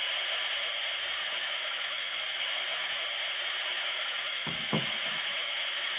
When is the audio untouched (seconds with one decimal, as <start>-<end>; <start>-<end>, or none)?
0.0-1.2; 3.0-3.7